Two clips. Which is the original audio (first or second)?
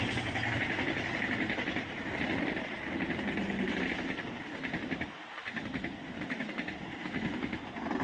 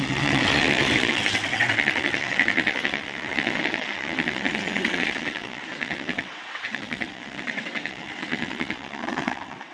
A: first